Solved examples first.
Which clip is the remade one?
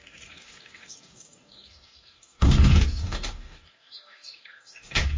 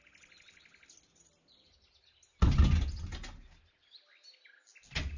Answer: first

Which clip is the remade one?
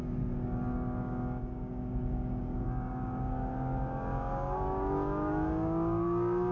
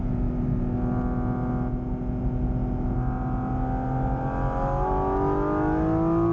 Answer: first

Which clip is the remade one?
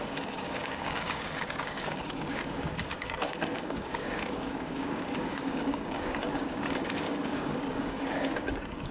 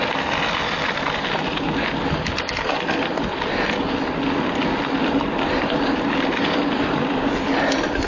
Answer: first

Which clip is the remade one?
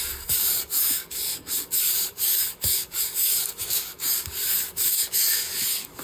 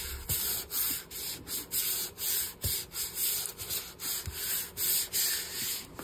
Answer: first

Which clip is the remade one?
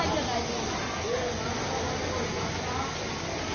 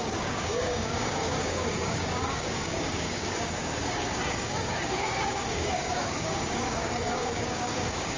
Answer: second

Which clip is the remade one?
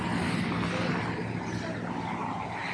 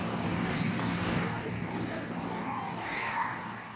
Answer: second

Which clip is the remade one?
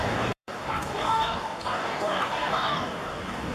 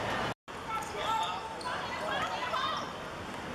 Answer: first